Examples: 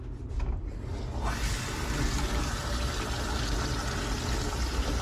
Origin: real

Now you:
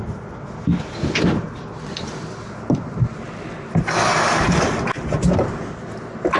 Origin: real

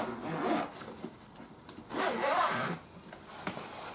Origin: real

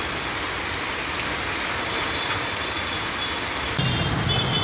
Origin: real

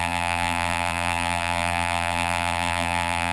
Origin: fake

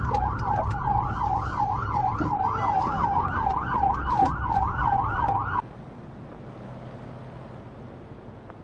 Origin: real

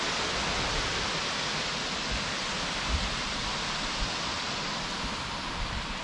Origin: real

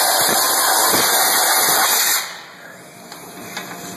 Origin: real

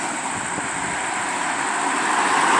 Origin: fake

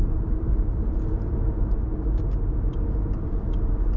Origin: fake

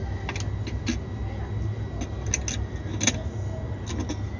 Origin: real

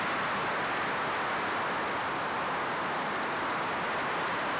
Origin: real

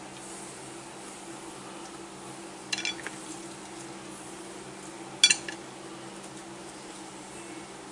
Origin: real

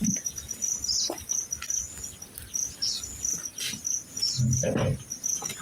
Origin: real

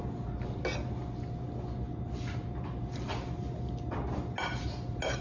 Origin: real